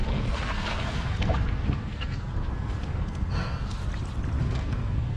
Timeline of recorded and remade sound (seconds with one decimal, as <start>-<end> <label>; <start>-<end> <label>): 0.0-3.8 remade; 3.8-4.4 recorded; 4.4-5.2 remade